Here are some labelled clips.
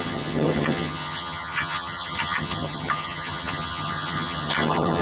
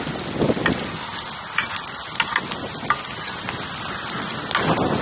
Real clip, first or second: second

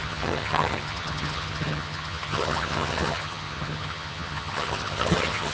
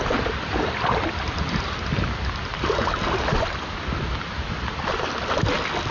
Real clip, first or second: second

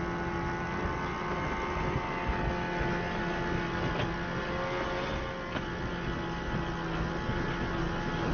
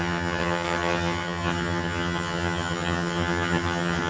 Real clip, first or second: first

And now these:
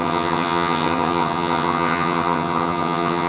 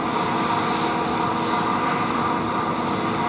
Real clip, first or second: second